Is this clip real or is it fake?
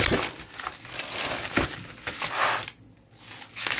real